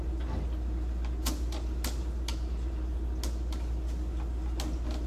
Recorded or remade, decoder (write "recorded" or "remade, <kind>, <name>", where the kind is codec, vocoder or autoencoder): recorded